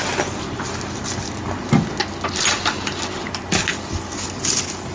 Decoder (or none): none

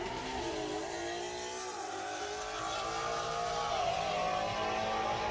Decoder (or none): none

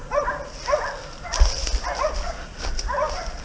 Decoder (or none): none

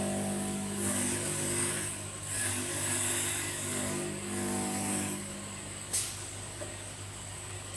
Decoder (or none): codec, DAC